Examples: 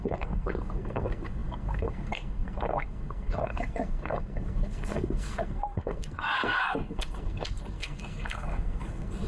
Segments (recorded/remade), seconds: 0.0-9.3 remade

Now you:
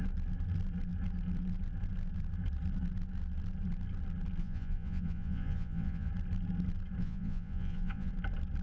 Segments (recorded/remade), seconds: 0.0-4.4 recorded; 4.4-6.1 remade; 6.1-7.0 recorded; 7.0-8.1 remade; 8.1-8.6 recorded

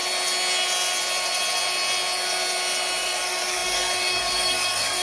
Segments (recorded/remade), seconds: 0.0-3.0 recorded; 3.0-5.0 remade

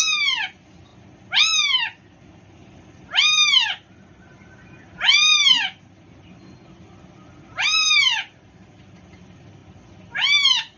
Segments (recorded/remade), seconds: 0.0-10.8 recorded

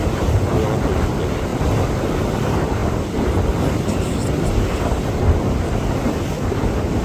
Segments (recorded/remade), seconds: 0.0-1.5 recorded; 1.5-2.1 remade; 2.1-7.0 recorded

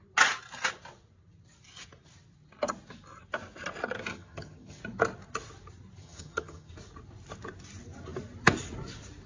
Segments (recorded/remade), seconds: 0.0-4.1 recorded; 4.1-4.8 remade; 4.8-6.0 recorded; 6.0-6.7 remade; 6.7-9.3 recorded

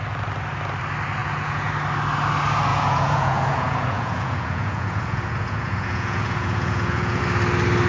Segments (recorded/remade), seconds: 0.0-1.2 recorded; 1.2-1.7 remade; 1.7-2.7 recorded; 2.7-7.2 remade; 7.2-7.9 recorded

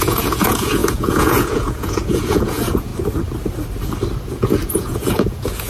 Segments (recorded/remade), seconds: 0.0-2.9 remade; 2.9-4.3 recorded; 4.3-5.7 remade